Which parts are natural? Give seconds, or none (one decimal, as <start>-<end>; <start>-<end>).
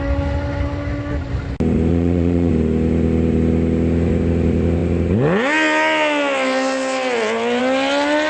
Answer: 0.0-1.9; 2.5-8.3